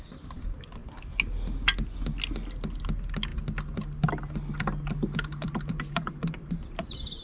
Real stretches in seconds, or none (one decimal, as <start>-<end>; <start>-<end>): 0.0-7.2